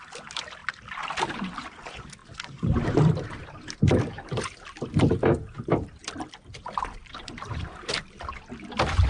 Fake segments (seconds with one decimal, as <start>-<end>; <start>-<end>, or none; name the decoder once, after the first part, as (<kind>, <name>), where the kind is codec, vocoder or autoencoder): 0.6-1.6 (vocoder, BigVGAN v2); 2.2-3.4; 6.0-8.1